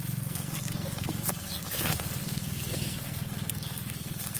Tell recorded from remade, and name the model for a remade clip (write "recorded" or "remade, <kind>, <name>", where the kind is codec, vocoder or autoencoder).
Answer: remade, codec, SNAC